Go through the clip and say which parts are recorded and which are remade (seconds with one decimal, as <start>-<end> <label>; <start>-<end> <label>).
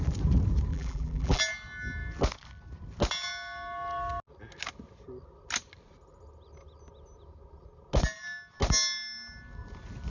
0.0-0.7 recorded; 0.7-1.4 remade; 1.4-10.1 recorded